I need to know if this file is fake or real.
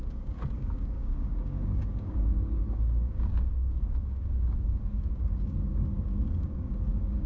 fake